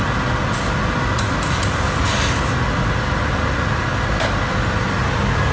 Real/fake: real